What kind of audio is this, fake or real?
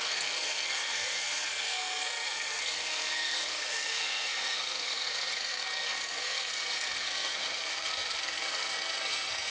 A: fake